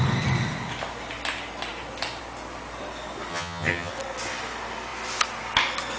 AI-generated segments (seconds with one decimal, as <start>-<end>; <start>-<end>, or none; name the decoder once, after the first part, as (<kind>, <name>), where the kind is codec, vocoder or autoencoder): 3.3-3.9 (vocoder, HiFi-GAN)